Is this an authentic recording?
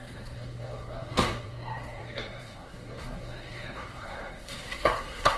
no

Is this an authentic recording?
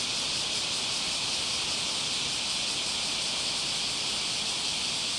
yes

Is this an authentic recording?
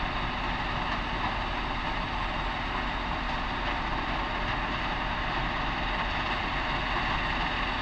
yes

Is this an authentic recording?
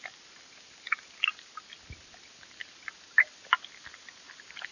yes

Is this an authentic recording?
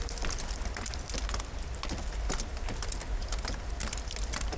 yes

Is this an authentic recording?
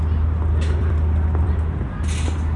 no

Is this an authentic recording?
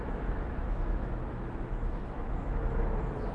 no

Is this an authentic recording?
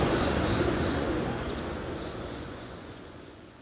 no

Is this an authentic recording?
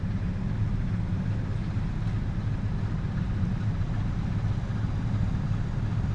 yes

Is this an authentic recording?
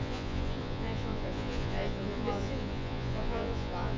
no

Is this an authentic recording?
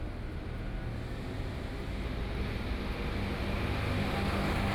yes